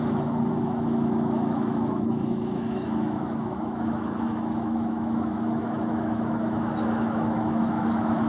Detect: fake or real fake